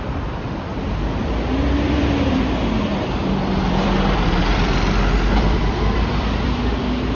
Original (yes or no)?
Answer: no